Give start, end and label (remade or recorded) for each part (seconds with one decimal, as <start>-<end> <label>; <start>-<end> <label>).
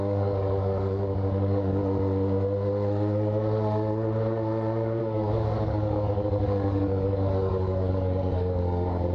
0.0-1.8 remade; 1.8-5.0 recorded; 5.0-9.1 remade